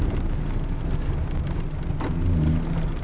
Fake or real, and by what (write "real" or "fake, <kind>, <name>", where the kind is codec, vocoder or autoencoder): real